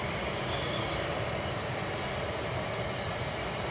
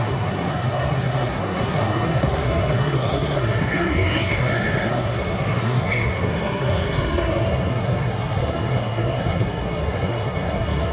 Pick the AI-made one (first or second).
second